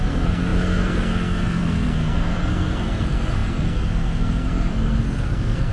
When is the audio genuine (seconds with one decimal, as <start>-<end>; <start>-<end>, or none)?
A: none